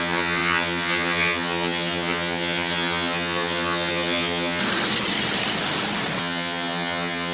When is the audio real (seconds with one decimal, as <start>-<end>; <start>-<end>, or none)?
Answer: 4.6-6.2